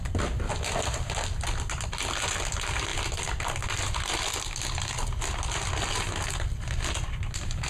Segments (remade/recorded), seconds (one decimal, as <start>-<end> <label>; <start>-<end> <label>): 0.0-7.7 recorded